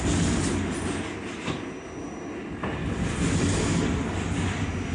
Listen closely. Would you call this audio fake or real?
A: real